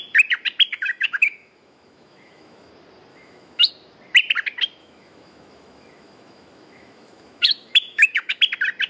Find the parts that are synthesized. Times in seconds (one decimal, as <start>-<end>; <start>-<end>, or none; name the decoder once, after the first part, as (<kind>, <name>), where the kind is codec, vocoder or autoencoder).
0.7-2.7 (autoencoder, DAC-VAE); 3.1-3.7; 4.8-8.4